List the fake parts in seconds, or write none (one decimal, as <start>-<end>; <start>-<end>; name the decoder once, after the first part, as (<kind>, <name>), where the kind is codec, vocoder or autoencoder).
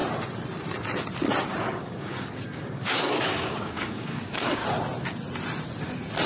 1.6-4.6 (codec, DAC)